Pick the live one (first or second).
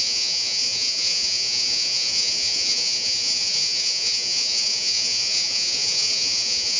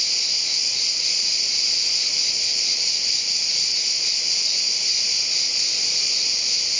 second